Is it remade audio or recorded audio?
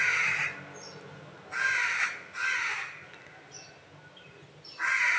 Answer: recorded